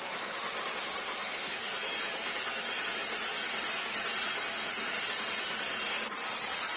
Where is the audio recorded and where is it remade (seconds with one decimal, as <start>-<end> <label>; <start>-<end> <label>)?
0.0-1.2 recorded; 1.2-1.7 remade; 1.7-6.8 recorded